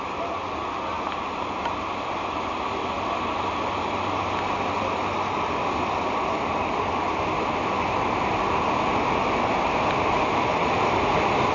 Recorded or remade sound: recorded